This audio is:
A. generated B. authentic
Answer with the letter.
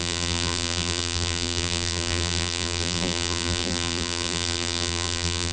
A